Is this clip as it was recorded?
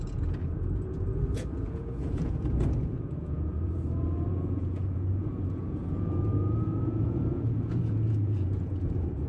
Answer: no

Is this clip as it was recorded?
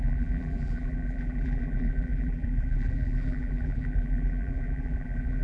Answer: no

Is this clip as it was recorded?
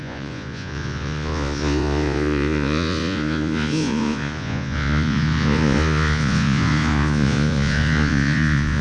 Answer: no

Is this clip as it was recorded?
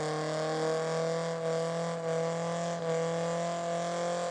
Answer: yes